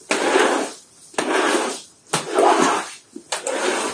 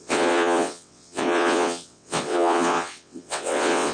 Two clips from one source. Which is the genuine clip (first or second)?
first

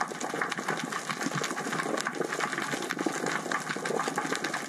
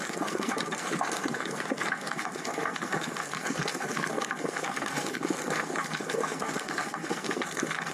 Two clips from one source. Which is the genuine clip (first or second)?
first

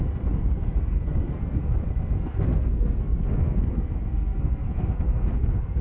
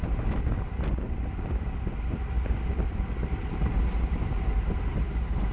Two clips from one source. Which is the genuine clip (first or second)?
second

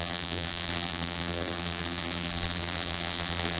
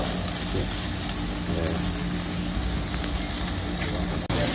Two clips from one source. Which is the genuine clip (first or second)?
second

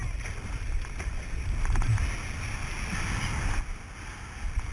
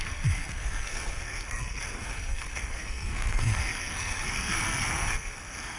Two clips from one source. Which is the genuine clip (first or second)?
first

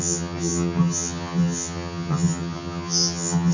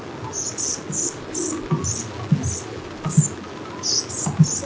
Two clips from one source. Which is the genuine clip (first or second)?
second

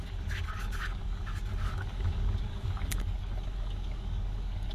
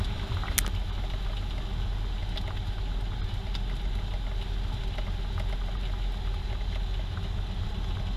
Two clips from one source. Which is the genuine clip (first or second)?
second